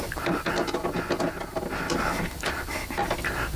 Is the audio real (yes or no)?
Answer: yes